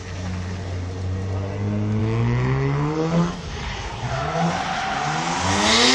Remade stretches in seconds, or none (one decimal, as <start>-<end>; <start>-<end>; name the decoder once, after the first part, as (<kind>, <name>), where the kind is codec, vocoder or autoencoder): 2.0-4.5 (codec, DAC)